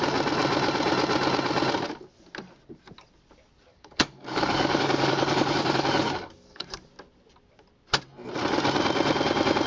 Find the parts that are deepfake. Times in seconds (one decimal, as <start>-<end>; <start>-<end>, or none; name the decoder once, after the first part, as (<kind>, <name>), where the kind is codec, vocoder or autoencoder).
3.7-6.8 (codec, DAC)